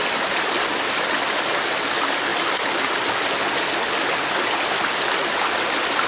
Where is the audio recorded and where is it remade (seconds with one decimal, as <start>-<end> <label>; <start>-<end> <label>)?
0.0-6.1 recorded